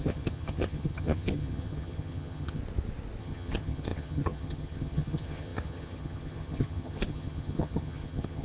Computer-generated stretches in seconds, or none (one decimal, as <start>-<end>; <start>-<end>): 0.0-2.6; 3.2-8.4